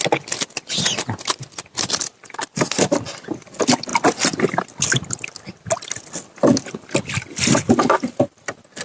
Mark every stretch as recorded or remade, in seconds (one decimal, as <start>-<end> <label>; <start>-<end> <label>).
0.0-8.8 recorded